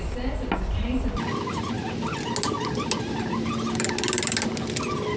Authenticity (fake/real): real